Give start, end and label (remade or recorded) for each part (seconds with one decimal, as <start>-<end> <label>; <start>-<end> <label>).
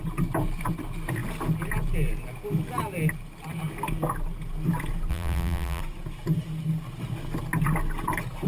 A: 0.0-5.1 recorded; 5.1-5.8 remade; 5.8-8.5 recorded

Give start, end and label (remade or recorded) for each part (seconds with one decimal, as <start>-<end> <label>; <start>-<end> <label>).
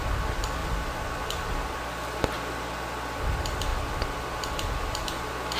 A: 0.0-5.6 remade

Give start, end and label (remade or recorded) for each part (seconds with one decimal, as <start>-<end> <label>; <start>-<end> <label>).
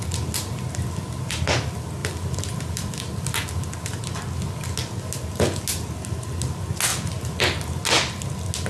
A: 0.0-2.0 recorded; 2.0-3.5 remade; 3.5-8.7 recorded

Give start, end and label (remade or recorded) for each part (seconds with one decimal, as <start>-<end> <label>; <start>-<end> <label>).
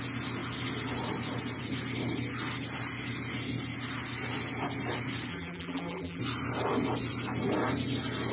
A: 0.0-5.3 recorded; 5.3-6.2 remade; 6.2-8.3 recorded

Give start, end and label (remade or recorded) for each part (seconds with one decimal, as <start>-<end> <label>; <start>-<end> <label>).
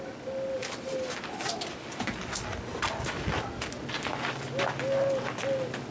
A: 0.0-5.9 recorded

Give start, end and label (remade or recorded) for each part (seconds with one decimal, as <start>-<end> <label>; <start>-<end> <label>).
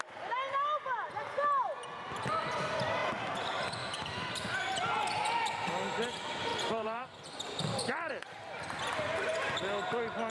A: 0.0-6.5 recorded; 6.5-8.8 remade; 8.8-10.3 recorded